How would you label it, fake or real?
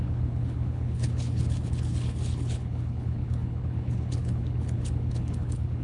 fake